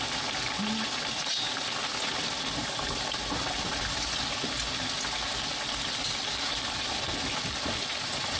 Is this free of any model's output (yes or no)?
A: yes